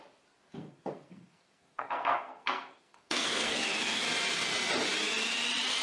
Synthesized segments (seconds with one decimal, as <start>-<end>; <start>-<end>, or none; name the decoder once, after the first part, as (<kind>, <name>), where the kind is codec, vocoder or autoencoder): 0.5-4.0 (codec, SNAC)